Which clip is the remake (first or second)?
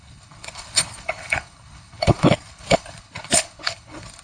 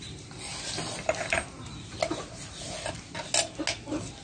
first